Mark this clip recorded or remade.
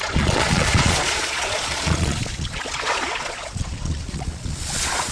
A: remade